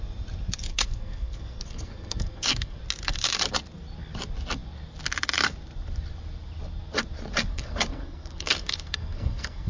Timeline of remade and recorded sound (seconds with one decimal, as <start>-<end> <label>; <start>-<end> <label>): 0.0-0.7 recorded; 0.7-2.8 remade; 2.8-7.5 recorded; 7.5-9.7 remade